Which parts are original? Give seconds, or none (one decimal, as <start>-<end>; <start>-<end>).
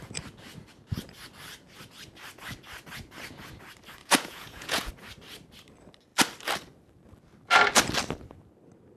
0.0-4.0; 4.9-9.0